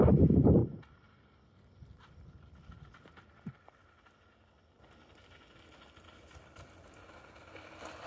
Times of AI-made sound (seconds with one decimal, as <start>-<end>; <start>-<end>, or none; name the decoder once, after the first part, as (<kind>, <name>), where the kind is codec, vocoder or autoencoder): none